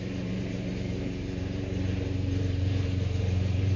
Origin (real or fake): fake